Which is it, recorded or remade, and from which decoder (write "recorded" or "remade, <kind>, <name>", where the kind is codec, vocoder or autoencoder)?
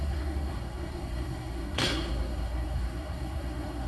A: remade, codec, SNAC